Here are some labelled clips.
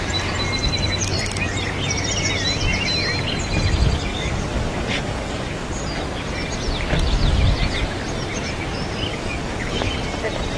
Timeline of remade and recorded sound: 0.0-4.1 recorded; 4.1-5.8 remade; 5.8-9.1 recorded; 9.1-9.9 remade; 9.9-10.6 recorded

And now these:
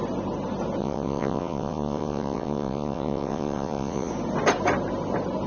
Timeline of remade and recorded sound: 0.0-0.8 recorded; 0.8-4.1 remade; 4.1-5.5 recorded

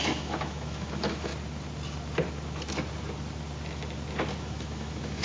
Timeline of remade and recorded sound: 0.0-1.3 remade; 1.3-4.4 recorded; 4.4-5.2 remade

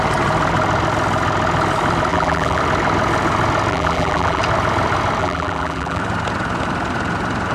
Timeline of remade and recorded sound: 0.0-2.1 recorded; 2.1-2.6 remade; 2.6-3.7 recorded; 3.7-4.4 remade; 4.4-5.2 recorded; 5.2-6.0 remade; 6.0-7.5 recorded